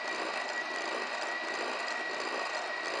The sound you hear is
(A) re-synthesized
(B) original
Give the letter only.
B